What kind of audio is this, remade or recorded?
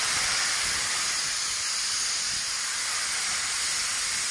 recorded